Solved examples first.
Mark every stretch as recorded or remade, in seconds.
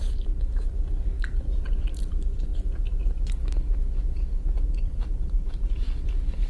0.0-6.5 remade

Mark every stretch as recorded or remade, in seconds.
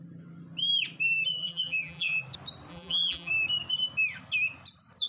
0.0-1.4 recorded; 1.4-2.2 remade; 2.2-2.7 recorded; 2.7-3.3 remade; 3.3-5.1 recorded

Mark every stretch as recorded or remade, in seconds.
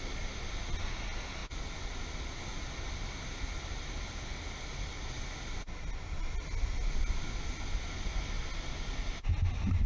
0.0-9.9 recorded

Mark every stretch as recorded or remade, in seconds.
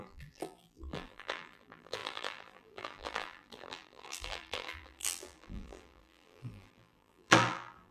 0.0-7.9 remade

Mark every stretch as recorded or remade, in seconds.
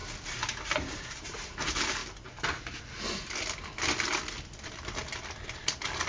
0.0-0.6 recorded; 0.6-2.0 remade; 2.0-6.1 recorded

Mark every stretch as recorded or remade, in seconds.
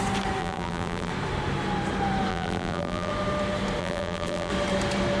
0.0-0.4 recorded; 0.4-1.1 remade; 1.1-2.3 recorded; 2.3-3.1 remade; 3.1-3.8 recorded; 3.8-4.5 remade; 4.5-5.2 recorded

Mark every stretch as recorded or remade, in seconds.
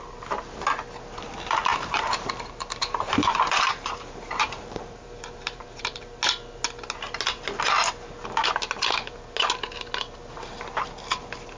0.0-1.7 recorded; 1.7-6.0 remade; 6.0-11.6 recorded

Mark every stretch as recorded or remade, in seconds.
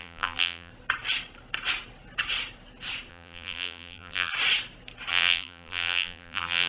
0.0-0.7 remade; 0.7-3.1 recorded; 3.1-4.3 remade; 4.3-5.1 recorded; 5.1-6.7 remade